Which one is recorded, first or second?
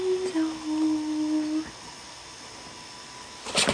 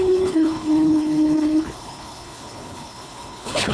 first